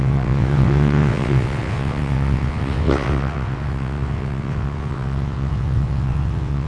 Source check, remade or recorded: remade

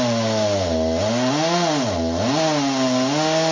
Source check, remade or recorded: recorded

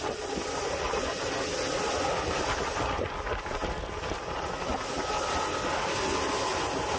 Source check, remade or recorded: recorded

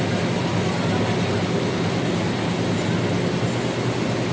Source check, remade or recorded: recorded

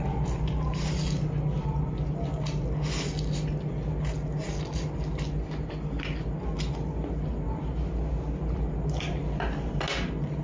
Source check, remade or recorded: recorded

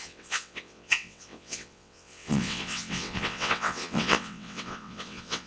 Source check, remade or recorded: remade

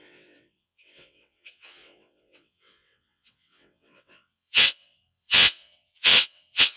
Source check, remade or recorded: remade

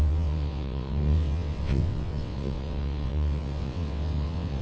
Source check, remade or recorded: remade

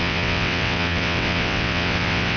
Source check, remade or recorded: remade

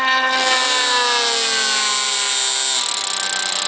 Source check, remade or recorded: recorded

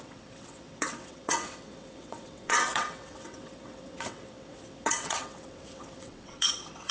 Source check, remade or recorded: remade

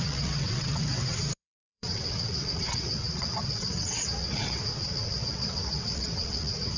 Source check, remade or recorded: remade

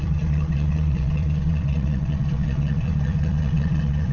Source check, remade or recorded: remade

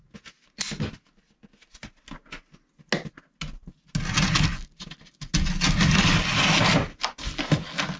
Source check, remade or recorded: recorded